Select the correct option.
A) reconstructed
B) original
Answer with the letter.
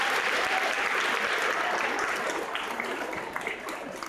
B